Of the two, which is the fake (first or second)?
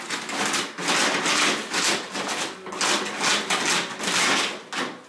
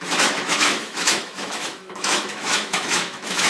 second